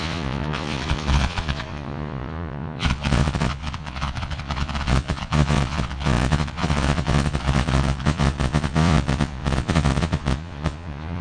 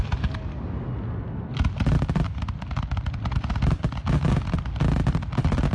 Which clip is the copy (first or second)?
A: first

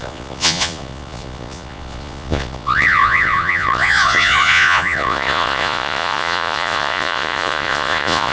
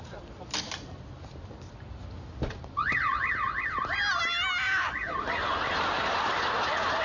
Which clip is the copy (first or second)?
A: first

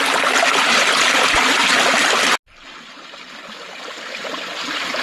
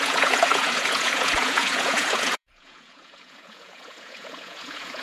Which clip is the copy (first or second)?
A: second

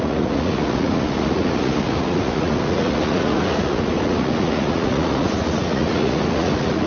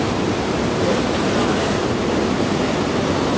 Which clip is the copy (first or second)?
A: first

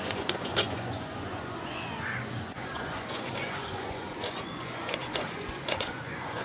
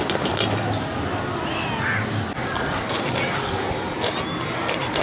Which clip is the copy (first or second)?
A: first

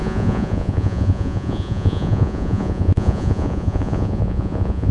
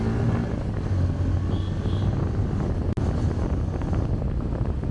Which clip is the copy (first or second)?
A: first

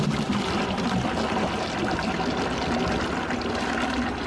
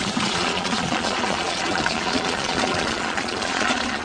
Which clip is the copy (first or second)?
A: second